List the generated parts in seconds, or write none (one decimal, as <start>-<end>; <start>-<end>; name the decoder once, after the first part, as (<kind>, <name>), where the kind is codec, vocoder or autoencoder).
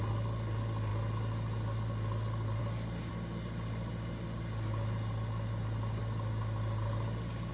none